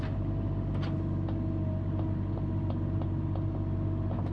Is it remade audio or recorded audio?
recorded